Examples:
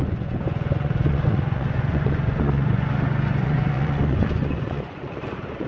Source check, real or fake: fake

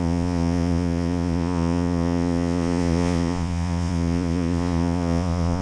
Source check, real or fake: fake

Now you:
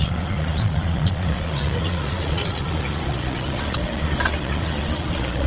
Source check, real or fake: fake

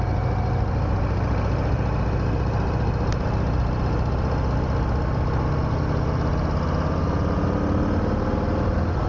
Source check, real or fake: real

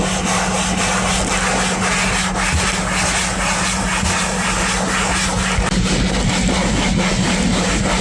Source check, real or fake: real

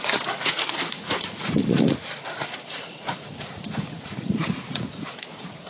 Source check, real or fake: fake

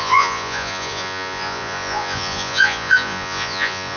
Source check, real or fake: fake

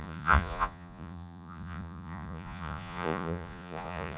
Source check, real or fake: fake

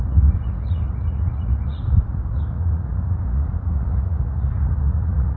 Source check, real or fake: fake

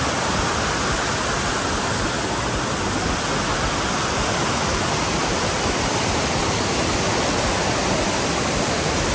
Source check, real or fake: real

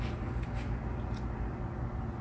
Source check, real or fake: real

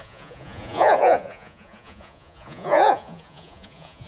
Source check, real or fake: fake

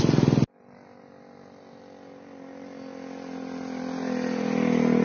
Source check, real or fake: real